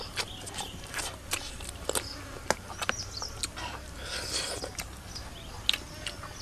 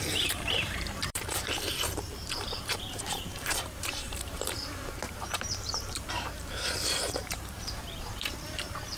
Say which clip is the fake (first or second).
second